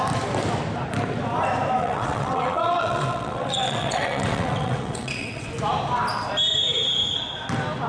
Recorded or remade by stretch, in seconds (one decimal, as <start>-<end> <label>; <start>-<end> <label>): 0.0-1.8 recorded; 1.8-5.5 remade; 5.5-7.9 recorded